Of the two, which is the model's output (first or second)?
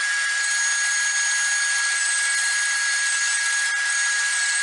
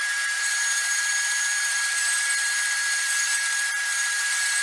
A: second